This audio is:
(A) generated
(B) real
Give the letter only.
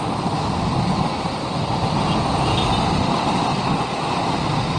B